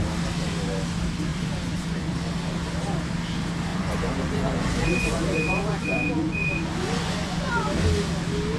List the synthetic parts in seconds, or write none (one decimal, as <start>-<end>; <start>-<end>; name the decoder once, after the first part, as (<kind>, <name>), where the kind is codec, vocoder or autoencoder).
1.3-2.1 (vocoder, Vocos); 3.7-7.5

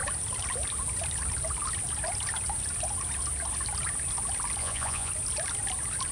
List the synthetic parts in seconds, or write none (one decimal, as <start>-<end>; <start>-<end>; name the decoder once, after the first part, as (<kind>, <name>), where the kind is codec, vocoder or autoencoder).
4.6-5.1 (vocoder, Vocos)

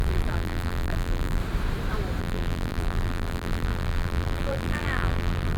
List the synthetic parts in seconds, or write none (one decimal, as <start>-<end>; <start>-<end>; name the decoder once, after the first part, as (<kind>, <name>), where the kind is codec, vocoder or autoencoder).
0.0-1.4 (vocoder, BigVGAN v2); 2.2-5.6

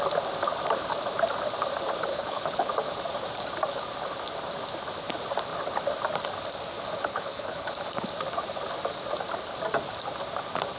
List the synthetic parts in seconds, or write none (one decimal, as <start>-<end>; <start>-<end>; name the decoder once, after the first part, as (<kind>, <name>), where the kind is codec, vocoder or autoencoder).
2.1-2.7 (codec, HILCodec); 7.1-7.7

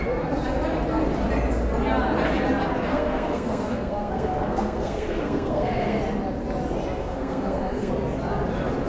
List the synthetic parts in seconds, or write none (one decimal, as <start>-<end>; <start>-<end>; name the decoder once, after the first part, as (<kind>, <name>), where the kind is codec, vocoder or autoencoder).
2.9-6.0 (codec, SNAC); 7.0-7.9

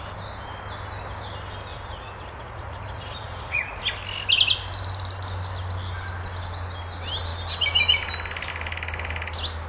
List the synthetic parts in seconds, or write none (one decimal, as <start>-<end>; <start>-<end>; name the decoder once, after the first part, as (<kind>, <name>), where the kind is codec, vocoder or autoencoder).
1.7-3.8 (vocoder, Vocos)

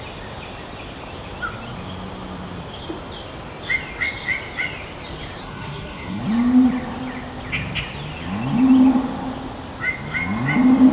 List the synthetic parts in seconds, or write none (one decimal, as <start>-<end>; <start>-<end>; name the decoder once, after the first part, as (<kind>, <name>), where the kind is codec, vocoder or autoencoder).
5.4-6.2 (codec, SNAC)